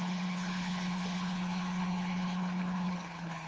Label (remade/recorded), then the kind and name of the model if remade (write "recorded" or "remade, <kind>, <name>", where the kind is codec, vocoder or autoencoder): remade, codec, HILCodec